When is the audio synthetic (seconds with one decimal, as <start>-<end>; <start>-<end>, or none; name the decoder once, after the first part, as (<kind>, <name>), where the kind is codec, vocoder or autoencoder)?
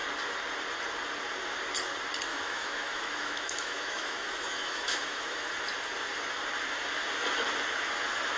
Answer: 2.3-5.5 (autoencoder, DAC-VAE)